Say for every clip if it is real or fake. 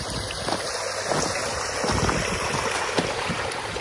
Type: real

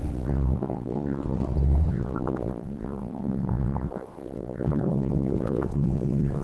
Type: fake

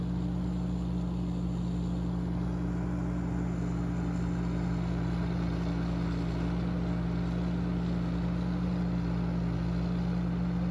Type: real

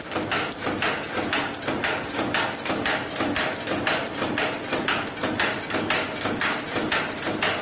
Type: real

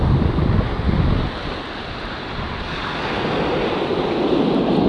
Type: real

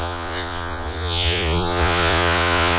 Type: fake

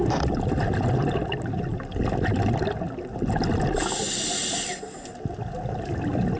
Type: real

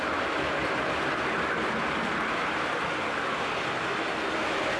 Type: real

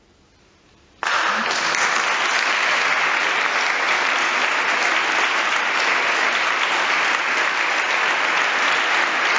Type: real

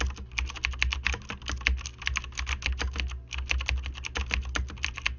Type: real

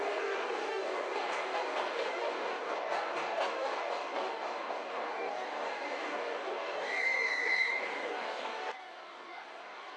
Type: fake